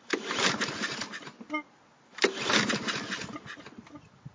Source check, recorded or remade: recorded